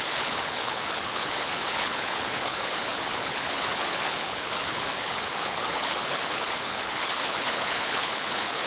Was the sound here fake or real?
fake